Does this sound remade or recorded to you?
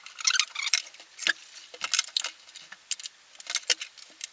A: recorded